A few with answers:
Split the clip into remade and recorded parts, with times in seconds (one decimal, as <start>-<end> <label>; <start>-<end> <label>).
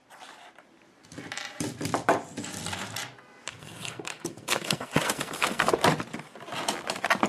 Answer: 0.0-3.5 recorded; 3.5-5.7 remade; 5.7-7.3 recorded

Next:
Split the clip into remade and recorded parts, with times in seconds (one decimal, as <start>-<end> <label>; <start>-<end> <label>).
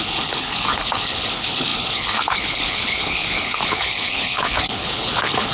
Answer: 0.0-5.5 remade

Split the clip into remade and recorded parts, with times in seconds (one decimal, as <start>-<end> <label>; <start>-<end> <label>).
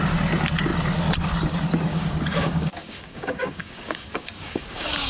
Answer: 0.0-1.9 recorded; 1.9-5.1 remade